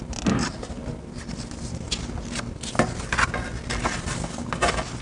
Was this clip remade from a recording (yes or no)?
no